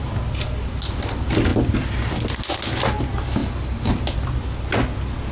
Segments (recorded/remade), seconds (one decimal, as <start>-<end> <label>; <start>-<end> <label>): 0.0-3.4 recorded; 3.4-4.0 remade; 4.0-5.3 recorded